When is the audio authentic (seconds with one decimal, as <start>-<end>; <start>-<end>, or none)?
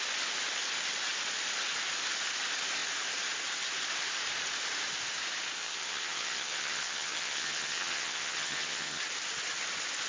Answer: 0.0-5.6; 9.0-10.1